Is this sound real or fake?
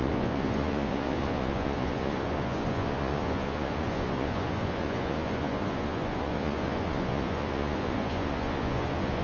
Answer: fake